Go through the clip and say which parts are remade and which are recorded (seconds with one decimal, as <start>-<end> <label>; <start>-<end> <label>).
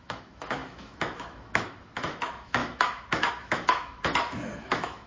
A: 0.0-5.1 remade